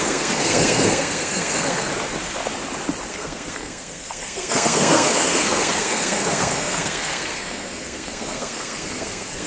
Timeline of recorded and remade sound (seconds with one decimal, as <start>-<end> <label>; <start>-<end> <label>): 0.0-1.9 remade; 1.9-3.1 recorded; 3.1-9.5 remade